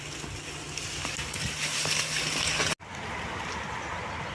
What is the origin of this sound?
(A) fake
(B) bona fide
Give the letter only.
B